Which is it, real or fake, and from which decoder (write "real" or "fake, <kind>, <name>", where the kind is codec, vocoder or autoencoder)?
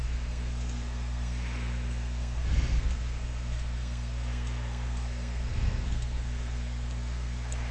fake, codec, SNAC